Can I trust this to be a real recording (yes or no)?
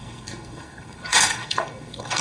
no